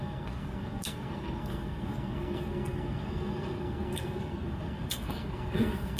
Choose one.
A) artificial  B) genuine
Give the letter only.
A